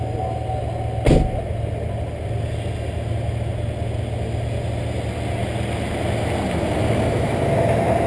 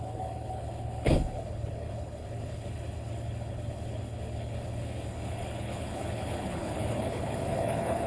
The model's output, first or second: second